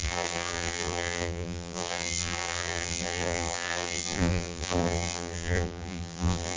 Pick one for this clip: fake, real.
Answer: fake